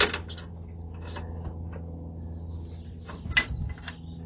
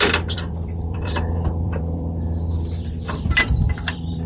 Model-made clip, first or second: second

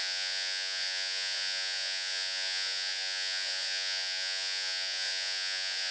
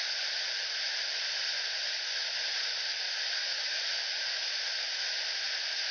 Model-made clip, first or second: first